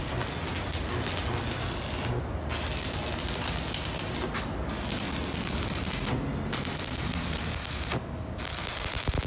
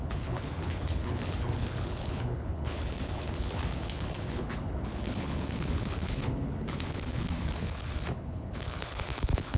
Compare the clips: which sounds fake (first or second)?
second